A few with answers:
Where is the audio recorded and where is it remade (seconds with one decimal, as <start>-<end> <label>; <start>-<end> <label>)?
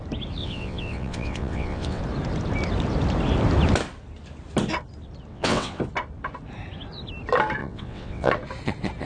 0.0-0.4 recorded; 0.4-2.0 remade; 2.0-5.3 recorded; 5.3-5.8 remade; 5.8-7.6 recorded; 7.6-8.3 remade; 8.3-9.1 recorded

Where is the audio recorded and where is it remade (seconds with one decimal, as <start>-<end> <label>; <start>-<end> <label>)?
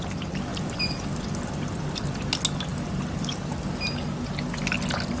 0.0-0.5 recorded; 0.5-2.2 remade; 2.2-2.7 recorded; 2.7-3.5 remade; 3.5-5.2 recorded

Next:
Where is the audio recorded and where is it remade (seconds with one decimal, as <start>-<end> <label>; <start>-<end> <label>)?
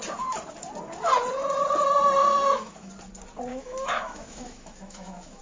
0.0-2.2 recorded; 2.2-2.9 remade; 2.9-3.5 recorded; 3.5-5.4 remade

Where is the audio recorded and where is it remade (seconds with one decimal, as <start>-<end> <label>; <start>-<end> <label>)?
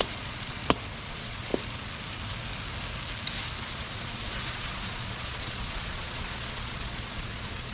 0.0-0.6 remade; 0.6-1.1 recorded; 1.1-1.5 remade; 1.5-3.7 recorded; 3.7-7.7 remade